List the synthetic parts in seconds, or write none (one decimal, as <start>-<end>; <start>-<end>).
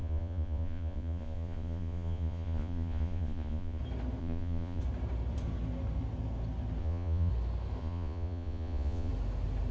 0.0-3.8; 4.2-4.8; 6.8-7.3; 7.8-9.1